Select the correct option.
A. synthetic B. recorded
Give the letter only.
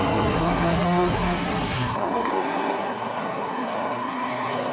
A